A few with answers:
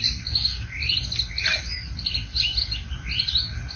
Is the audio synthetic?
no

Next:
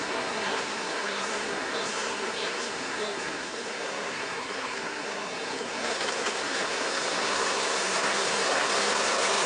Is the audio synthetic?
yes